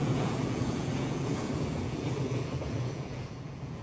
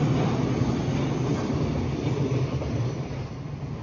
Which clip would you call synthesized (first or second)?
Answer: first